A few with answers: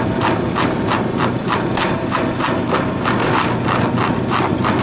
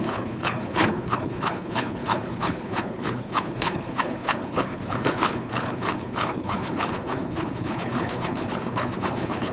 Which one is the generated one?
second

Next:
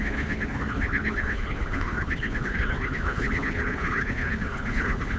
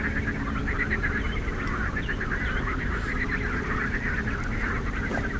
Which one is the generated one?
first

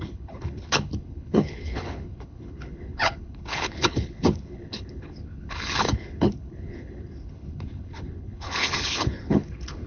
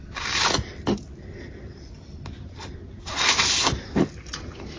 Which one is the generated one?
first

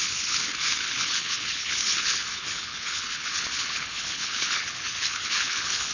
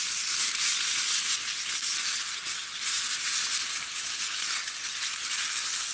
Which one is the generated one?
first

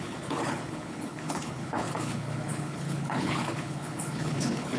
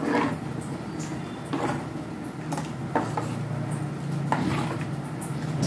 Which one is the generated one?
first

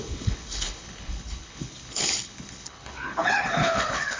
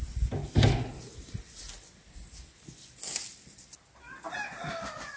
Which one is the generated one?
first